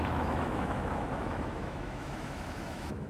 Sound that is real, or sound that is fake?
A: fake